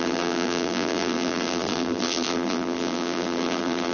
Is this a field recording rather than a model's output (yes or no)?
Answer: no